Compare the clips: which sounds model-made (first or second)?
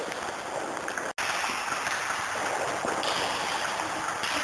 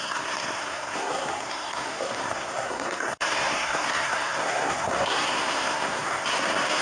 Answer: second